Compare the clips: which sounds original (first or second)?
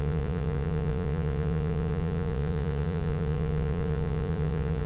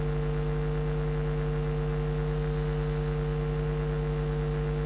second